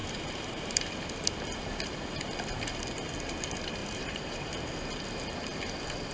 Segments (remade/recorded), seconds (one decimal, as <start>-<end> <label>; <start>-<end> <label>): 0.0-0.9 remade; 0.9-3.8 recorded; 3.8-4.5 remade; 4.5-6.1 recorded